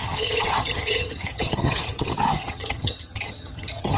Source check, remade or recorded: remade